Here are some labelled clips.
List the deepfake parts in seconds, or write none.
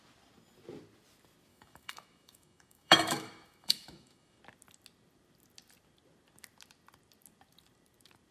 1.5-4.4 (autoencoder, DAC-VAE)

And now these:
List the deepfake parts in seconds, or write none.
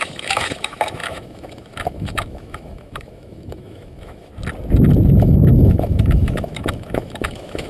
0.0-4.3 (autoencoder, DAC-VAE); 5.2-7.7